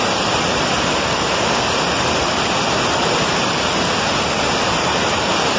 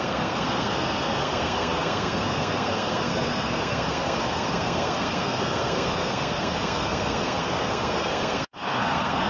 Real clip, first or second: first